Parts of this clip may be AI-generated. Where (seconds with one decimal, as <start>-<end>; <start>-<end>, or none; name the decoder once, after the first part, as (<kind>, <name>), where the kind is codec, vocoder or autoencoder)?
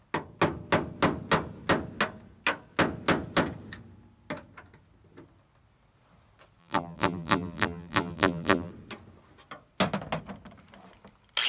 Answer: 6.6-8.7 (vocoder, BigVGAN v2)